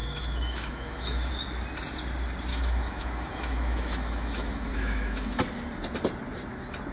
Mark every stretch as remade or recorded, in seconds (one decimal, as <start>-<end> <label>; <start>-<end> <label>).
0.0-1.3 remade; 1.3-2.5 recorded; 2.5-5.4 remade; 5.4-6.9 recorded